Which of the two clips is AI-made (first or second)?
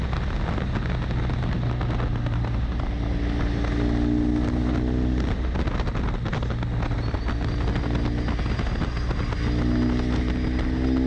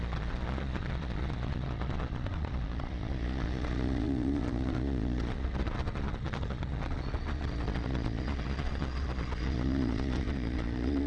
second